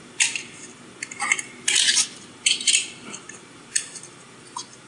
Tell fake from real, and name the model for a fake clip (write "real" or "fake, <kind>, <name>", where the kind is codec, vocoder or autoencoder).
fake, vocoder, BigVGAN v2